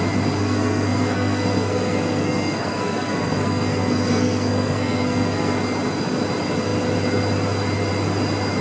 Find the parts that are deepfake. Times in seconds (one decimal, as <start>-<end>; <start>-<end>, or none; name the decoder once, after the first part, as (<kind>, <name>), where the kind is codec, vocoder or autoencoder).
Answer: 0.4-5.6 (codec, SNAC)